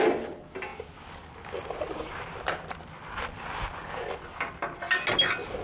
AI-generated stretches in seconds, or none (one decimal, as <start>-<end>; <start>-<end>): none

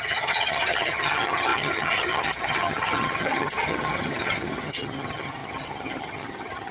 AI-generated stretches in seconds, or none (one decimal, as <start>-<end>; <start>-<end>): 0.0-6.7